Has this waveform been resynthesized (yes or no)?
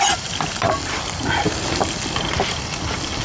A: no